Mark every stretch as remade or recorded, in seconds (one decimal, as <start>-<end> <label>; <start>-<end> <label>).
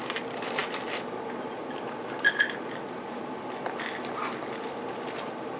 0.0-5.6 recorded